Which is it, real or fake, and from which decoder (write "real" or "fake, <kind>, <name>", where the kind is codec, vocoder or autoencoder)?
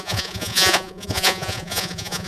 fake, vocoder, Vocos